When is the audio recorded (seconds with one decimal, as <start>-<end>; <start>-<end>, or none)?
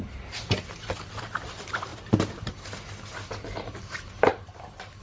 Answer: 0.0-4.3